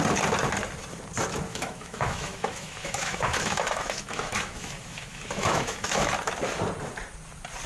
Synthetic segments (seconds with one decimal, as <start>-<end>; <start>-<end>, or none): 1.5-6.1